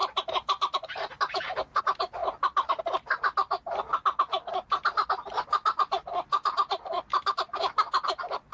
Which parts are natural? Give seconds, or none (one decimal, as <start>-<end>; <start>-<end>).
1.8-2.2; 2.8-7.1; 7.7-8.5

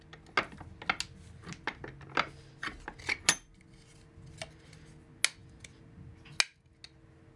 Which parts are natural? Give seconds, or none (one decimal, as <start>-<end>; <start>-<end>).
0.0-7.4